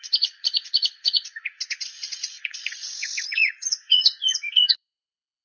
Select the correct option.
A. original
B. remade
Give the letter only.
B